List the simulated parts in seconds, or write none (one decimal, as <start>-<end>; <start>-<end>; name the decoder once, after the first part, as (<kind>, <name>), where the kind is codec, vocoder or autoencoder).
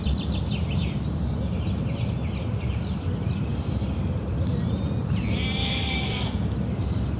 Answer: 5.6-6.3 (codec, DAC)